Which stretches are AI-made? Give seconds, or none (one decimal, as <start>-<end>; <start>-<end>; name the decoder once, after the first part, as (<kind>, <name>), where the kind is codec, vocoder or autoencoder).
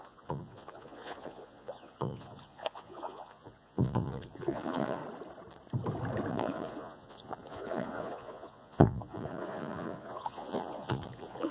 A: 0.0-5.0 (vocoder, Vocos); 6.3-11.5